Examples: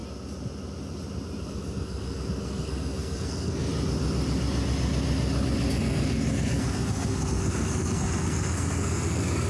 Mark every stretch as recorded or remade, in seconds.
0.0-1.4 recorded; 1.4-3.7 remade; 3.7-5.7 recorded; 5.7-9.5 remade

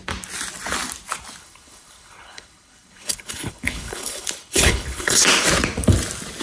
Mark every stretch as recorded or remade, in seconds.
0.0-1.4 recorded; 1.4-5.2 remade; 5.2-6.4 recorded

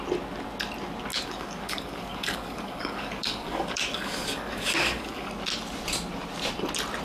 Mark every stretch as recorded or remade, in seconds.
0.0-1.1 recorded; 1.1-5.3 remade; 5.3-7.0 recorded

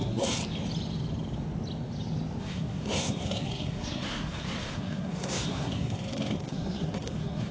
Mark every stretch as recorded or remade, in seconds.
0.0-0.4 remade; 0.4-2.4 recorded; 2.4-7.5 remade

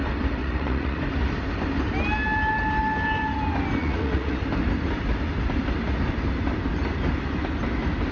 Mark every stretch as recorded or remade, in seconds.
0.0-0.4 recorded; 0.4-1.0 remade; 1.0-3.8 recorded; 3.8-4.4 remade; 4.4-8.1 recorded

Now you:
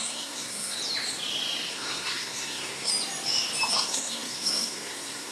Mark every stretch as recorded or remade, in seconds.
0.0-0.8 remade; 0.8-1.7 recorded; 1.7-2.9 remade; 2.9-3.7 recorded; 3.7-5.3 remade

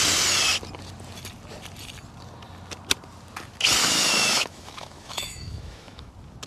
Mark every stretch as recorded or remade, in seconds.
0.0-3.8 recorded; 3.8-6.1 remade; 6.1-6.5 recorded

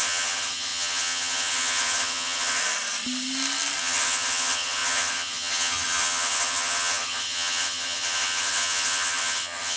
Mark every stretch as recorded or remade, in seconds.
0.0-2.6 remade; 2.6-3.8 recorded; 3.8-9.8 remade